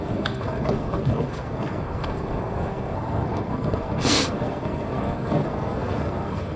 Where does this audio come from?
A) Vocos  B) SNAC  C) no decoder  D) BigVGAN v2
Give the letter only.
B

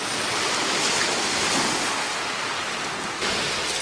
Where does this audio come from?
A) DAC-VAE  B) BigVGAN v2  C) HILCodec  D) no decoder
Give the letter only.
D